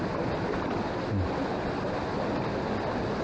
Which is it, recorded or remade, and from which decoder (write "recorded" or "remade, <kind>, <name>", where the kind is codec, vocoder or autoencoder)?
recorded